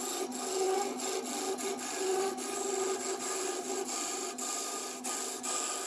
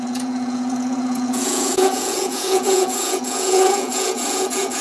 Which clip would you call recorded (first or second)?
first